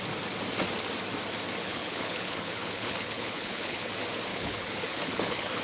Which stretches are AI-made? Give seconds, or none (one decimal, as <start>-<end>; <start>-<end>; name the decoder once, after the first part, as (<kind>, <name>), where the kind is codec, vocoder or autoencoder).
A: 1.6-3.9 (codec, HILCodec); 4.3-5.6